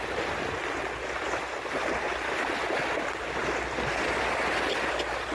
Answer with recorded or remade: recorded